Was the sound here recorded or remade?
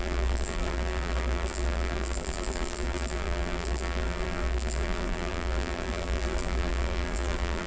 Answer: remade